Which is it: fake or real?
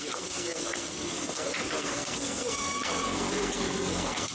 fake